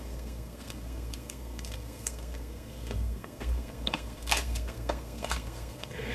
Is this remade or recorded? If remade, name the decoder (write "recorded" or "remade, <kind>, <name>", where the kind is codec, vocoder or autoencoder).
remade, codec, SNAC